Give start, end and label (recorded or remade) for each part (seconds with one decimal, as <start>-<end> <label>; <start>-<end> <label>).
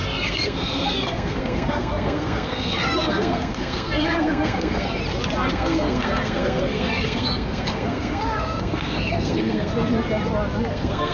0.0-5.0 remade; 5.0-5.5 recorded; 5.5-9.7 remade; 9.7-10.7 recorded; 10.7-11.1 remade